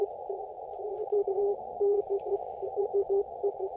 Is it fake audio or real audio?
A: fake